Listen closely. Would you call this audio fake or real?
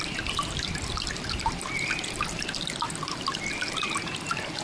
fake